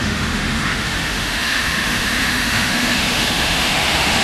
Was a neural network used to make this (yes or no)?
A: yes